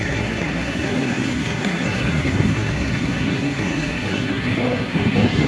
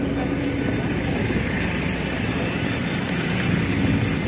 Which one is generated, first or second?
first